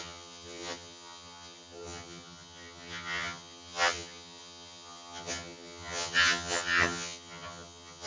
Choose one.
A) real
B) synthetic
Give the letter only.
B